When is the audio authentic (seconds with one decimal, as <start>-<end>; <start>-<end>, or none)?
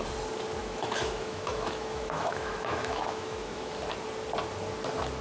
0.0-0.6; 3.7-5.2